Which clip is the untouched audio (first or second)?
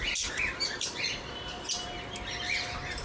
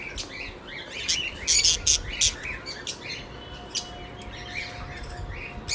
second